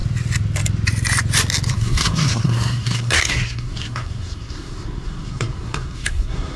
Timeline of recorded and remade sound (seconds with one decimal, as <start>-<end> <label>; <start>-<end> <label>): 0.0-1.7 recorded; 1.7-6.6 remade